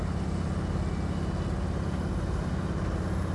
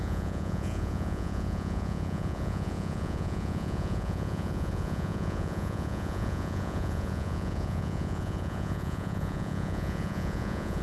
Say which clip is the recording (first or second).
first